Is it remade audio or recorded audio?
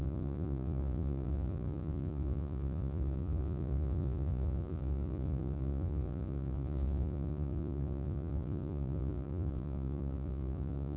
remade